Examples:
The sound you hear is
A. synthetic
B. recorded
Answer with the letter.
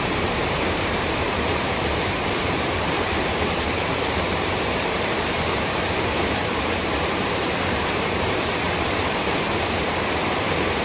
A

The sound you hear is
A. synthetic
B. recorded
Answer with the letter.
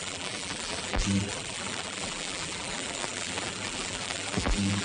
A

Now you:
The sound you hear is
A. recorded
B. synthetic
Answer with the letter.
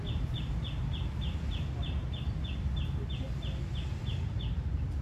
A